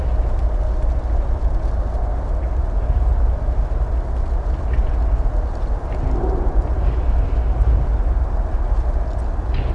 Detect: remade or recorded recorded